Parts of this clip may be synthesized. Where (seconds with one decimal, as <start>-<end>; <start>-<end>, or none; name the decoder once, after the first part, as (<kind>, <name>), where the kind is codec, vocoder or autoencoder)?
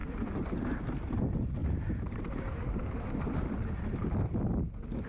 1.6-3.5 (vocoder, BigVGAN v2)